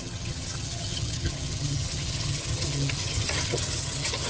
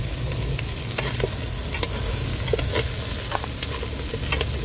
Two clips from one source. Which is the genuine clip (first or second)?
second